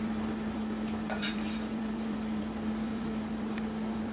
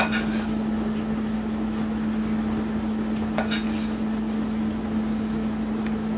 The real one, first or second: second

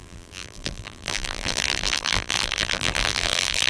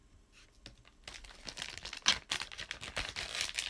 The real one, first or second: second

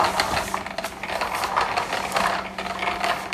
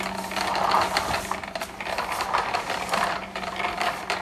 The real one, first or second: first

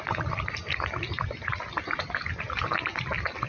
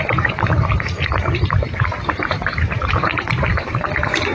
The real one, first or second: first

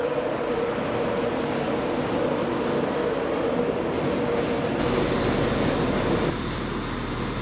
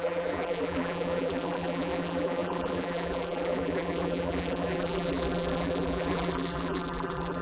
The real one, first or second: first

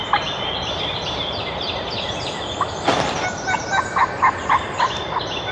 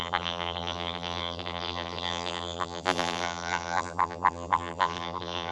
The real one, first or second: first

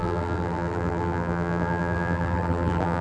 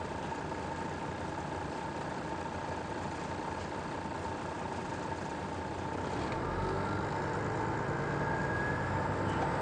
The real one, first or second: second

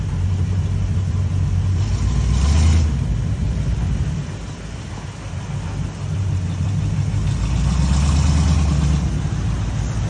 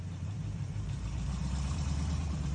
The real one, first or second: first